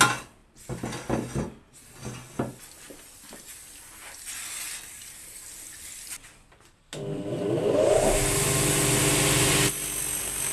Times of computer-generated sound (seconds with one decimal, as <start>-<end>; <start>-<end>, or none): none